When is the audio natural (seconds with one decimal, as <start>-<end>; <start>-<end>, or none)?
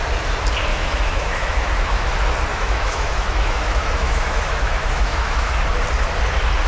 0.0-0.7; 2.1-2.5; 5.6-6.7